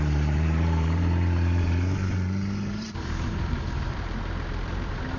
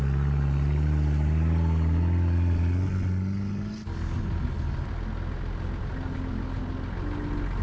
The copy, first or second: first